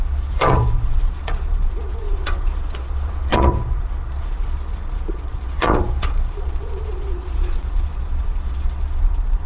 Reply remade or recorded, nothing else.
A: remade